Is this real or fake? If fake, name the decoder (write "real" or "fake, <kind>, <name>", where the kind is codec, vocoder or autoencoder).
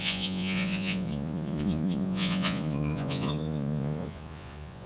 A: fake, vocoder, Vocos